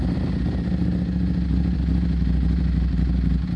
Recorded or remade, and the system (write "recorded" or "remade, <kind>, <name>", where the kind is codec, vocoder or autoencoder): recorded